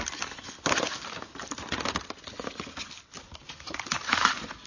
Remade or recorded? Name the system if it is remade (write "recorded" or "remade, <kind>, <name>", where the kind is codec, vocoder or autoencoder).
recorded